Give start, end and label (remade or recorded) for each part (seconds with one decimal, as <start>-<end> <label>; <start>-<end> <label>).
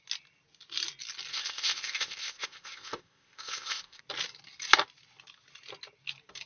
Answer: 0.0-1.3 recorded; 1.3-4.0 remade; 4.0-6.5 recorded